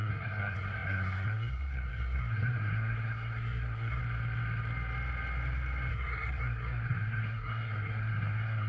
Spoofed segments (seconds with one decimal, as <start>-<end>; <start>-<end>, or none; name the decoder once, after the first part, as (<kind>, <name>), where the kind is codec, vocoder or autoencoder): 0.0-4.0 (codec, SNAC); 5.9-8.7